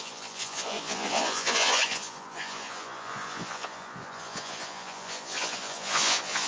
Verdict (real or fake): fake